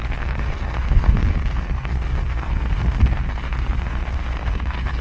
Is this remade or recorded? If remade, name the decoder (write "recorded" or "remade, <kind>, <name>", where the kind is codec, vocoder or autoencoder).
remade, codec, SNAC